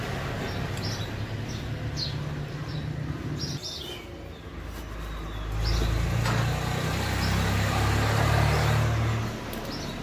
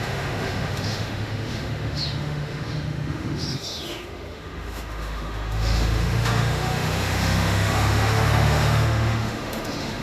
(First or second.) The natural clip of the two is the first